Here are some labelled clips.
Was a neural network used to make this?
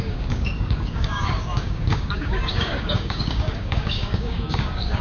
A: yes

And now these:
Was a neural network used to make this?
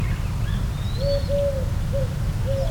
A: no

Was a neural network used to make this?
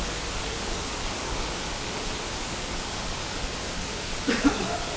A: yes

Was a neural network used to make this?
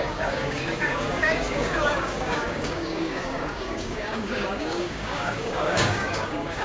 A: yes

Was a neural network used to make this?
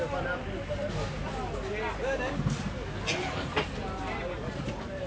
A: no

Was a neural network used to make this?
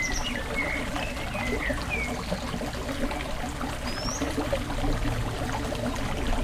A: no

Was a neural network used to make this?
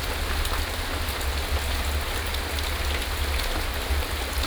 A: no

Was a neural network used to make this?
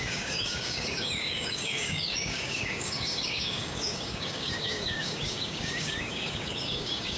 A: yes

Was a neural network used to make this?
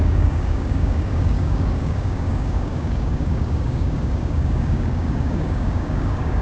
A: yes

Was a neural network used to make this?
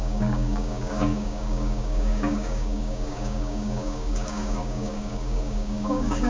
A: yes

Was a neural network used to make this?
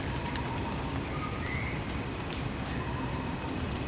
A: no